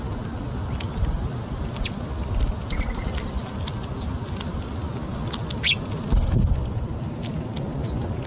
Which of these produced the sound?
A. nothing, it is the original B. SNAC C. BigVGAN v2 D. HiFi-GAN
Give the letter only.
A